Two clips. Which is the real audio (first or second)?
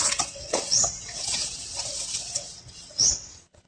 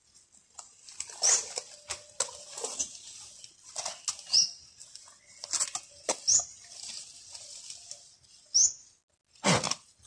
second